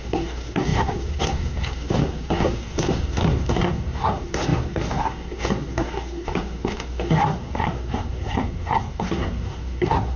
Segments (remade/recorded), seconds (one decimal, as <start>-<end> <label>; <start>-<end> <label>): 0.0-10.2 remade